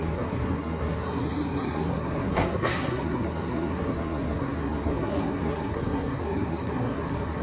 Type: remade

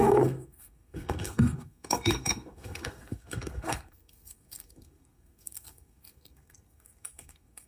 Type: remade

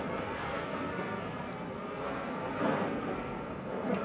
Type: remade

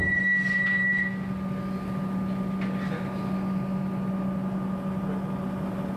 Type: recorded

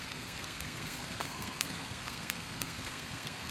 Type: remade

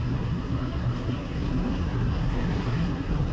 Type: remade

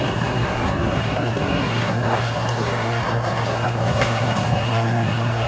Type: remade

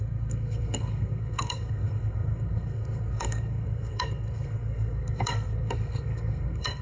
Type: remade